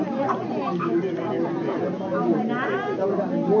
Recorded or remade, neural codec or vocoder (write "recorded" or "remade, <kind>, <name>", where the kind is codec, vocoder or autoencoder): recorded